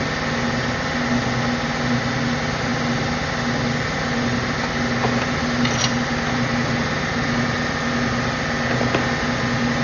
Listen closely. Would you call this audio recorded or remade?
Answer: recorded